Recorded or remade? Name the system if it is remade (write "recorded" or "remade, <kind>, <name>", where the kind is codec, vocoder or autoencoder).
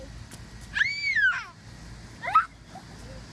recorded